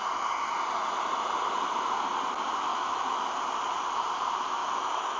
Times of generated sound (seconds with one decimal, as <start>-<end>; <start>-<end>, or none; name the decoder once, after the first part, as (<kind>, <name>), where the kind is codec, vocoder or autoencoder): 2.7-3.3 (autoencoder, DAC-VAE); 4.6-5.2